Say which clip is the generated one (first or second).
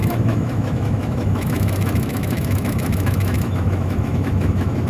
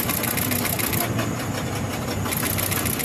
first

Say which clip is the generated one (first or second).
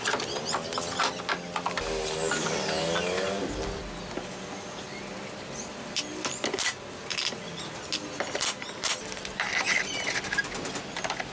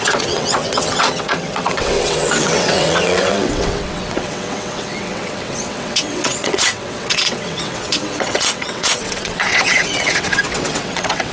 second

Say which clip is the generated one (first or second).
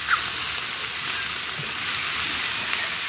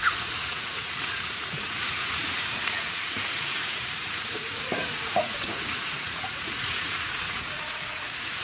second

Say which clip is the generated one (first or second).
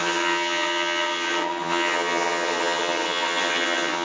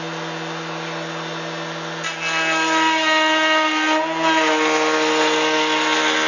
first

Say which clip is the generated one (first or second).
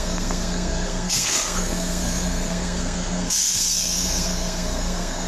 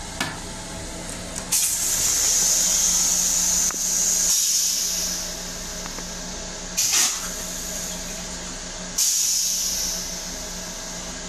first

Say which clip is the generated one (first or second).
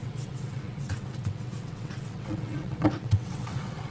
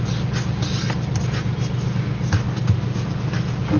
first